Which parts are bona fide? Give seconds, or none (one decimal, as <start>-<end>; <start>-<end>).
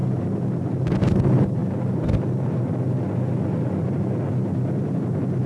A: 0.0-5.5